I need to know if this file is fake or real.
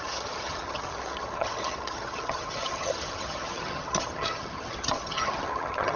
fake